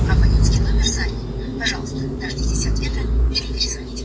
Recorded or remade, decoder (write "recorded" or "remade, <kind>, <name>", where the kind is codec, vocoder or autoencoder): recorded